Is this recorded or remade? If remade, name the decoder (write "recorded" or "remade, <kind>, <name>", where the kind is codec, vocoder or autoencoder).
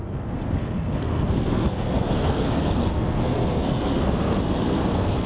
remade, codec, SNAC